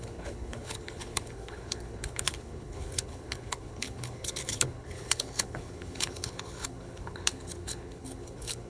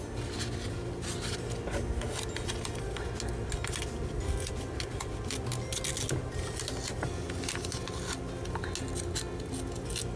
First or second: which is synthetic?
first